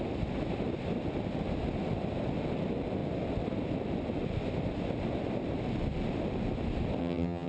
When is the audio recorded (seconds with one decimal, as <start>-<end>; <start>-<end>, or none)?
0.0-7.0